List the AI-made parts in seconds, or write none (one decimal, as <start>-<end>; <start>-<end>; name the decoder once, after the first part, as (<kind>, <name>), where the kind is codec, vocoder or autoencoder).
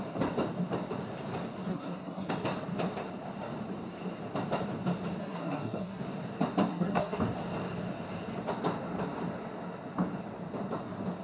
1.7-2.3 (codec, SNAC); 5.2-6.0; 6.7-7.2